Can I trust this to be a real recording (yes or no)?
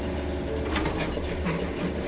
yes